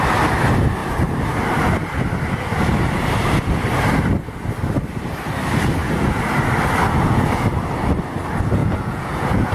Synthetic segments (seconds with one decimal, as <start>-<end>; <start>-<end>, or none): 8.6-9.5